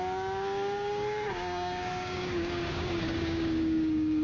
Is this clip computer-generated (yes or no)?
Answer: yes